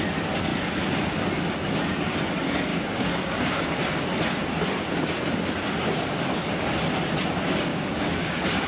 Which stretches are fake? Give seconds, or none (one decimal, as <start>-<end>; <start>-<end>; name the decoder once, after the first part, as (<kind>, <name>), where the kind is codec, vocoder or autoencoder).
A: 2.7-3.8 (codec, DAC); 7.7-8.7